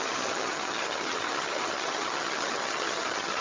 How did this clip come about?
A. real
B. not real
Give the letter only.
B